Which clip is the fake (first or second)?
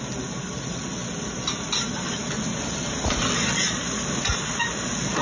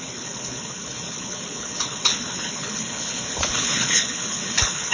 second